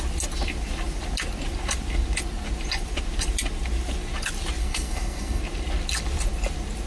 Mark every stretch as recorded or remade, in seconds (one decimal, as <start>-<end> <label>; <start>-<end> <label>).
0.0-4.6 recorded; 4.6-5.4 remade; 5.4-6.9 recorded